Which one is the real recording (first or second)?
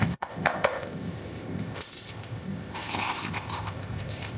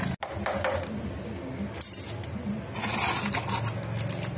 second